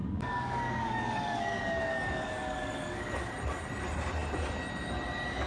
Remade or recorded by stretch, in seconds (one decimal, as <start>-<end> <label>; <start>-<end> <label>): 0.0-3.3 remade; 3.3-5.5 recorded